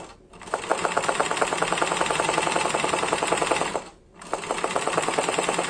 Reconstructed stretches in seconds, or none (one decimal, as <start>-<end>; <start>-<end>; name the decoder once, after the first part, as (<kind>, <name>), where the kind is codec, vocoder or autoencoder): none